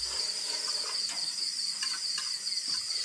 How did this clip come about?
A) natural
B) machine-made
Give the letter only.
A